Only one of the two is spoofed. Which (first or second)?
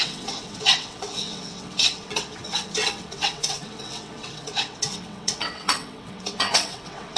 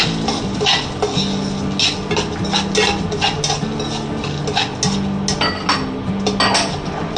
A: first